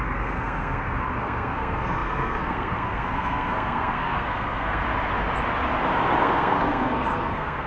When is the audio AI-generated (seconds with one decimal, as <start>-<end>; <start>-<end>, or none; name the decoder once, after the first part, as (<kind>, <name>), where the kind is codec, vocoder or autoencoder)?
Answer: 0.0-4.8 (codec, SNAC); 6.2-7.7